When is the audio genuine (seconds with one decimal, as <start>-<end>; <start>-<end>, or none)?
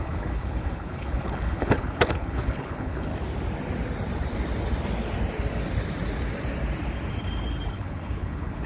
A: 3.1-7.7